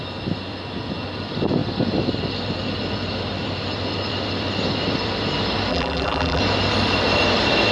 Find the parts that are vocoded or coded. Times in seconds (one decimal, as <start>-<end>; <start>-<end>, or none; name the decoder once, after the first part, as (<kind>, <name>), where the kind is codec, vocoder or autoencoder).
5.7-6.4 (vocoder, BigVGAN v2)

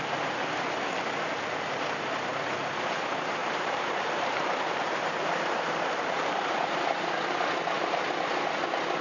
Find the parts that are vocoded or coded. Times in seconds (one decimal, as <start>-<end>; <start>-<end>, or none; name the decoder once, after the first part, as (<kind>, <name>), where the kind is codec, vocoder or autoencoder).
3.4-6.4 (vocoder, BigVGAN v2)

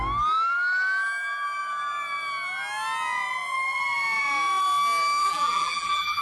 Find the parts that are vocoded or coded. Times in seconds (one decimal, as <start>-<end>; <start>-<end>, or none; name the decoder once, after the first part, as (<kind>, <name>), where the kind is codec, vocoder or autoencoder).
5.2-6.2 (vocoder, BigVGAN v2)

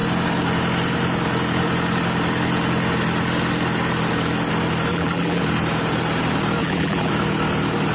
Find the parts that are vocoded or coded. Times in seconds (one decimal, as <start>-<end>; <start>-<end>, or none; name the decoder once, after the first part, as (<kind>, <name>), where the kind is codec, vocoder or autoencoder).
4.9-5.4 (vocoder, BigVGAN v2); 6.6-7.1

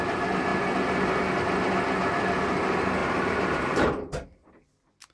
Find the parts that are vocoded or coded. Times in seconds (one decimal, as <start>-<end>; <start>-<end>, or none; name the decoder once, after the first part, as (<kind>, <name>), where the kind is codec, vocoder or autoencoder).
3.0-3.9 (vocoder, BigVGAN v2)

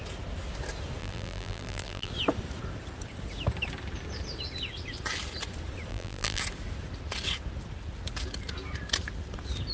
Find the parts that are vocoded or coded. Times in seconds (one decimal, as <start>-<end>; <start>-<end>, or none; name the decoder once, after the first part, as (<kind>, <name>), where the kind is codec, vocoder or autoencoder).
1.0-2.1 (vocoder, BigVGAN v2); 5.9-6.4

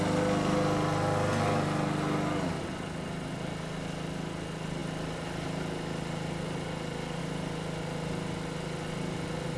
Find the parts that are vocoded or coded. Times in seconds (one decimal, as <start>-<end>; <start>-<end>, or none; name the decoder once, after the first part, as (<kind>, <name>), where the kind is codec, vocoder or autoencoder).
none

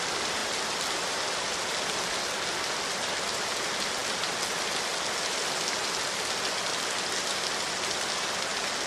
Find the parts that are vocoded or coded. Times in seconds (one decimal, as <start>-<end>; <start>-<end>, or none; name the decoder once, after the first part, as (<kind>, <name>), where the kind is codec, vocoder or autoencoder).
none